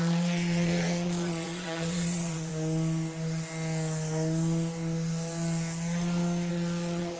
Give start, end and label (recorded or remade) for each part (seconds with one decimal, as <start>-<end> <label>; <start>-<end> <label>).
0.0-2.5 remade; 2.5-6.5 recorded; 6.5-7.2 remade